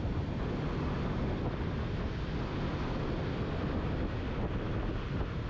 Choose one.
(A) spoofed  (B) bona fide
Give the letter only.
B